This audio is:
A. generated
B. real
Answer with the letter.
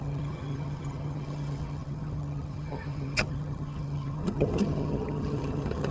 A